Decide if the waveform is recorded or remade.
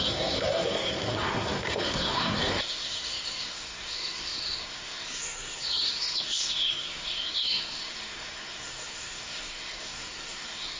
remade